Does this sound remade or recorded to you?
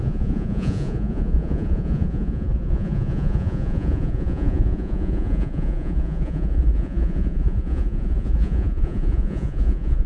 remade